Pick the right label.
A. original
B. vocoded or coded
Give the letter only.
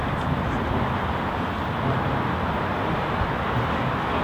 A